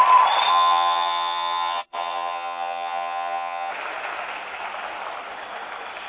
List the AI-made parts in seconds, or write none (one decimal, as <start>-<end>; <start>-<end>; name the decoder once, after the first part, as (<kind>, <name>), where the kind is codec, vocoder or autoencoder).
0.5-3.7 (vocoder, HiFi-GAN)